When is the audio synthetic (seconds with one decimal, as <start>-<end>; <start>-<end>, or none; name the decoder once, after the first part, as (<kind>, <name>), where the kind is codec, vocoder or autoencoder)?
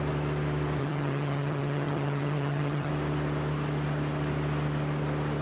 0.8-2.9 (vocoder, HiFi-GAN)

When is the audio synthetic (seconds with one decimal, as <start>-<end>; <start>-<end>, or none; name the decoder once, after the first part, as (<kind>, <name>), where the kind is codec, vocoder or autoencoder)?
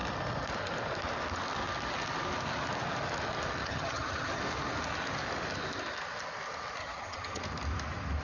3.6-4.4 (vocoder, HiFi-GAN); 6.8-7.4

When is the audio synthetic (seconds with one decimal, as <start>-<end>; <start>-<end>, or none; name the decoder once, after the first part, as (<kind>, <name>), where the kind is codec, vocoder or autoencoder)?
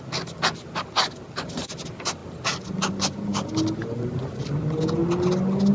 none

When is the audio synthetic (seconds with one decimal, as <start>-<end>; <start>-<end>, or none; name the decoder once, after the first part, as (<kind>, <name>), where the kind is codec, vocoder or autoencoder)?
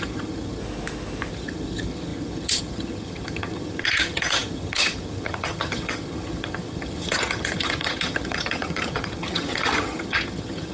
0.0-0.6 (vocoder, HiFi-GAN); 1.3-10.7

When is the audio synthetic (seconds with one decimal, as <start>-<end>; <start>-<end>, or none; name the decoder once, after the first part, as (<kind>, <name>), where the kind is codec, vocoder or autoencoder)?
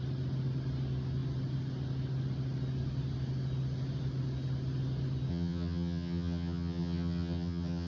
5.3-7.9 (vocoder, HiFi-GAN)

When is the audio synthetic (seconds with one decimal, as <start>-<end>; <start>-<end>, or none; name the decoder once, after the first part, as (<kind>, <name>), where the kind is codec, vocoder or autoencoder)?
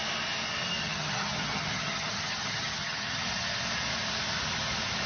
0.8-3.2 (vocoder, HiFi-GAN)